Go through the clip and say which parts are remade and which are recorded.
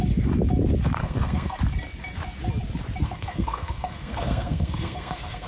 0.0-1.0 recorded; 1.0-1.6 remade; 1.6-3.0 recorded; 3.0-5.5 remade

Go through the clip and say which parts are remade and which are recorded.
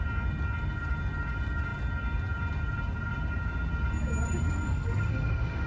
0.0-4.7 recorded; 4.7-5.7 remade